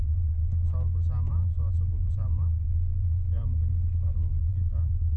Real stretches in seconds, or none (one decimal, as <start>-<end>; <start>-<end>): 0.4-1.3; 3.4-4.5